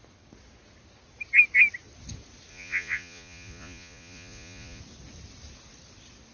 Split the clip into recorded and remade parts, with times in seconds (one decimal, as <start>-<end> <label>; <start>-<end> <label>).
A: 0.0-2.5 recorded; 2.5-4.8 remade; 4.8-6.3 recorded